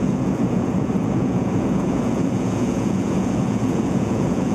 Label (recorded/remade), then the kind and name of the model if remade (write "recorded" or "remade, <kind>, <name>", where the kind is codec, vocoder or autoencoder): remade, vocoder, Vocos